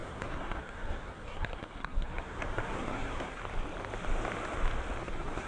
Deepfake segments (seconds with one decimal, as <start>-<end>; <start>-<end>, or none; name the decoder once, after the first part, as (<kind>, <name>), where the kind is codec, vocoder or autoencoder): 0.0-3.4 (codec, SNAC); 5.0-5.5